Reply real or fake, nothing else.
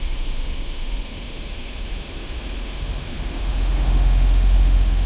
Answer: fake